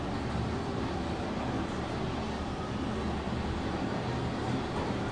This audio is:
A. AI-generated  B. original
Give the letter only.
B